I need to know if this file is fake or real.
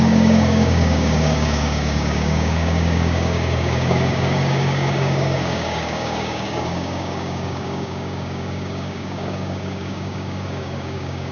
fake